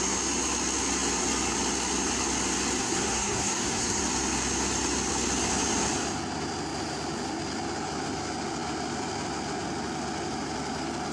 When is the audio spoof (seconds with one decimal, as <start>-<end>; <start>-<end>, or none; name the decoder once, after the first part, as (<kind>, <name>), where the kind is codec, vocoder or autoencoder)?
2.8-4.0 (codec, SNAC)